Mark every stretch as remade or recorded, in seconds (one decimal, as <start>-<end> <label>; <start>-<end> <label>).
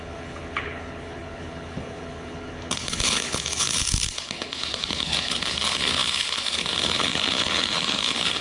0.0-8.4 remade